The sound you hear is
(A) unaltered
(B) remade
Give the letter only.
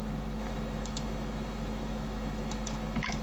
B